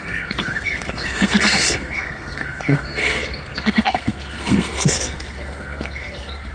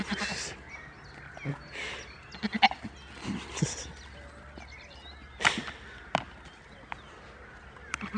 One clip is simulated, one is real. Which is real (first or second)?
second